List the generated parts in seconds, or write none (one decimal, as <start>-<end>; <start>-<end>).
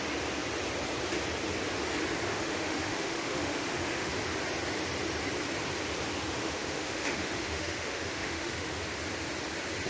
2.3-4.1; 6.4-8.8